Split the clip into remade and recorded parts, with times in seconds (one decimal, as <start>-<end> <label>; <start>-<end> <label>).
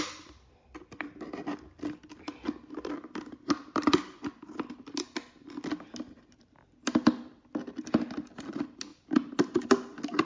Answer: 0.0-10.2 recorded